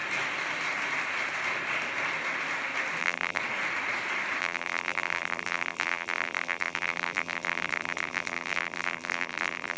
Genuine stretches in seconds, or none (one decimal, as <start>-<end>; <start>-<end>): 0.0-3.0; 3.4-4.4